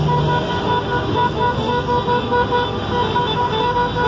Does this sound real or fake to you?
real